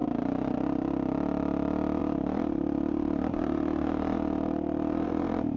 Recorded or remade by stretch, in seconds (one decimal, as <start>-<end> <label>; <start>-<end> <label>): 0.0-0.9 remade; 0.9-2.0 recorded; 2.0-5.6 remade